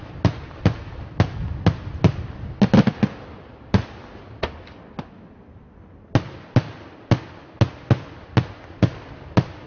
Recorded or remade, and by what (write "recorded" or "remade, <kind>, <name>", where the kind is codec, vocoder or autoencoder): recorded